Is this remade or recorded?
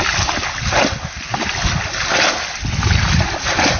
recorded